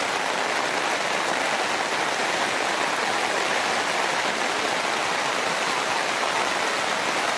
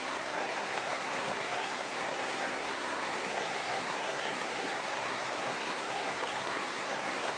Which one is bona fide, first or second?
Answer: first